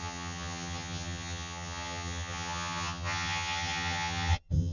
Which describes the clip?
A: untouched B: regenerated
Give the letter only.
B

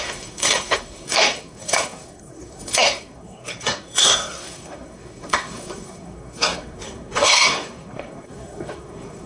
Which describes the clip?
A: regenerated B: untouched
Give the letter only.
A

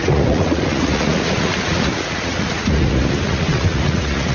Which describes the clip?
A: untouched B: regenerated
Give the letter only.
B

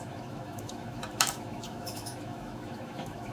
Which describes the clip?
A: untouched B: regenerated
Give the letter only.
B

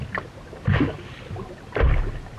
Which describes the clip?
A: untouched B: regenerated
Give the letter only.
A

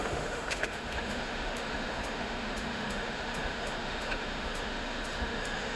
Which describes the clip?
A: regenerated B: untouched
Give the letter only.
A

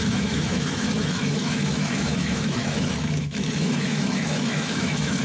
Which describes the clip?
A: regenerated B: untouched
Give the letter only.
A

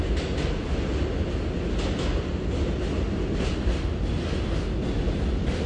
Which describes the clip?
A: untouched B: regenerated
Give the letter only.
A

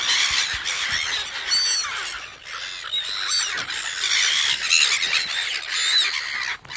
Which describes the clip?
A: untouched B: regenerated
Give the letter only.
A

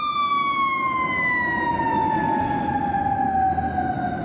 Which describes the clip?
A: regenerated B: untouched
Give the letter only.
B